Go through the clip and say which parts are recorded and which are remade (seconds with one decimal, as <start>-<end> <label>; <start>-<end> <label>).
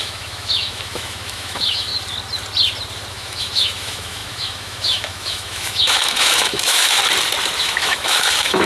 0.0-1.9 remade; 1.9-3.1 recorded; 3.1-7.0 remade; 7.0-7.6 recorded; 7.6-8.7 remade